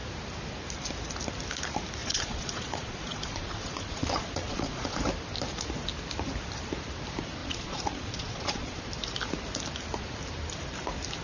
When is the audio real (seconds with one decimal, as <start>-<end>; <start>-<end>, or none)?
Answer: 0.0-2.0; 5.0-7.4; 8.8-11.2